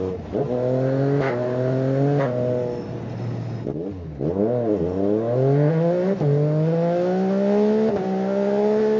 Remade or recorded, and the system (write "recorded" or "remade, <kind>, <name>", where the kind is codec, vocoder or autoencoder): recorded